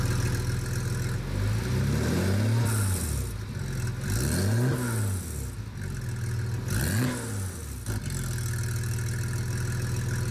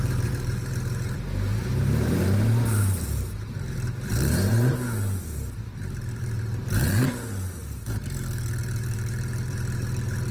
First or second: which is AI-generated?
second